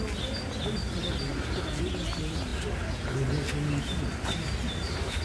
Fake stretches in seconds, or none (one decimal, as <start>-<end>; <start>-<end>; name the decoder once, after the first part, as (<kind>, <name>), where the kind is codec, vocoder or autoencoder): none